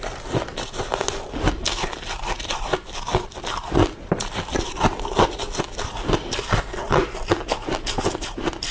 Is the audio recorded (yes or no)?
yes